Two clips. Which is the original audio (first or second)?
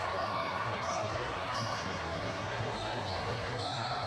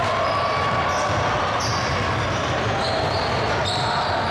second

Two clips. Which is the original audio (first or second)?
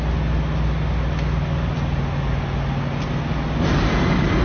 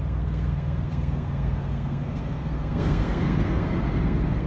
first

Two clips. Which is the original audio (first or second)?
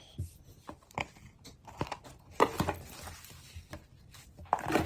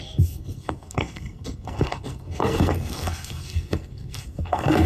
first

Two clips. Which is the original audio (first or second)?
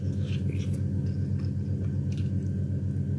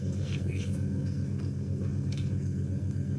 first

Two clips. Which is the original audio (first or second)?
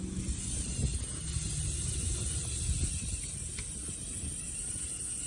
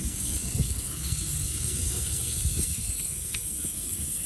first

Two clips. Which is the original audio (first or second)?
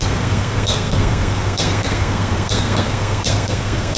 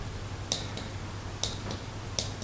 second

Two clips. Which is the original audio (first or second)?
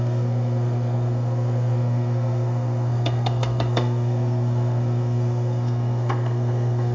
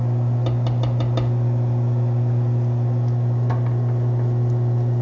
second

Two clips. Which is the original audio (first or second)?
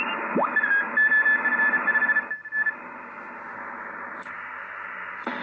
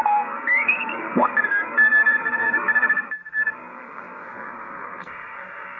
first